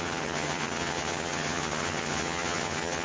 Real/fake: fake